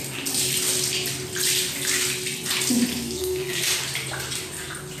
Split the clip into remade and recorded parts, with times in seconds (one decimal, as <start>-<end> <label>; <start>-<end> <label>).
0.0-2.9 recorded; 2.9-3.6 remade; 3.6-5.0 recorded